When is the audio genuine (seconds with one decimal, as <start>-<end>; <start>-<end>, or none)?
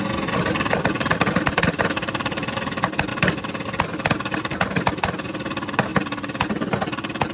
3.1-4.4; 5.9-7.3